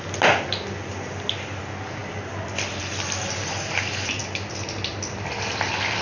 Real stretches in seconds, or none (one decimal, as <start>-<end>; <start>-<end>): 0.0-2.0; 2.8-6.0